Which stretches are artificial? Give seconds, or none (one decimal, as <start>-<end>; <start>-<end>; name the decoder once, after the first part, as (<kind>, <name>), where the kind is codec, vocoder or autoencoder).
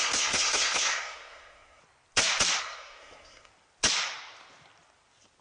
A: 0.0-1.8 (codec, SNAC); 2.6-3.5